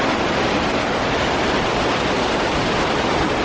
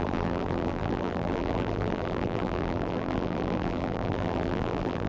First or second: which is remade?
second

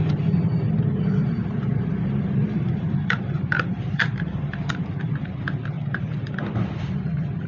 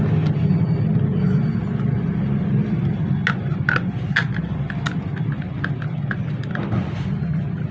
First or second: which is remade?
first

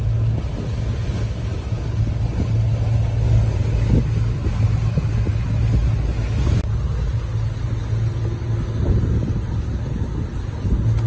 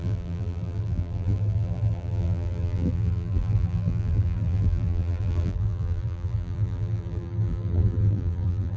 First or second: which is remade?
second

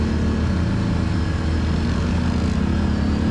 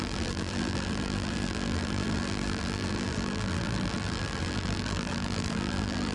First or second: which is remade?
second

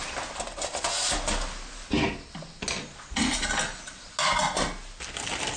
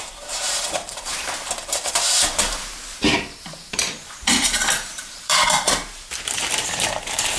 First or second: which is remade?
second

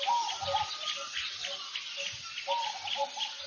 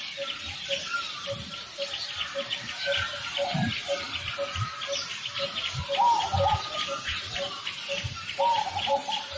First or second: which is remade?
second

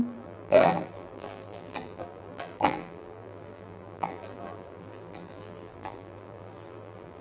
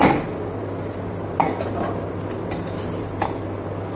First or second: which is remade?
first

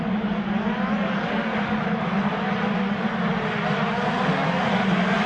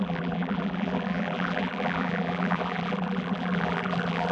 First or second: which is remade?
second